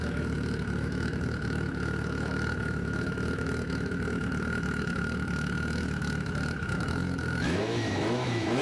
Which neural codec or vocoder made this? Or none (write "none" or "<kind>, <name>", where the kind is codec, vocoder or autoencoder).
autoencoder, DAC-VAE